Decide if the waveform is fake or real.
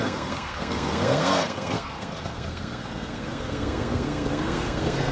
fake